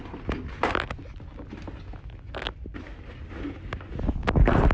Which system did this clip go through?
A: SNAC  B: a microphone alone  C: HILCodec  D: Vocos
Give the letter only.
B